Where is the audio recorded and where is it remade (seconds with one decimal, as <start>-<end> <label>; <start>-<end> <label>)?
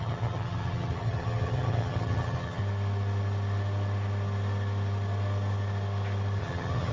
0.0-2.6 remade; 2.6-6.4 recorded; 6.4-6.9 remade